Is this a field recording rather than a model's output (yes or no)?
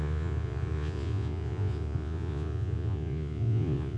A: no